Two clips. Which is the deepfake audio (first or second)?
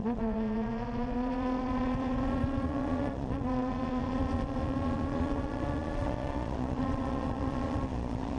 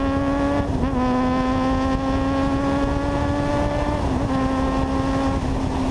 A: first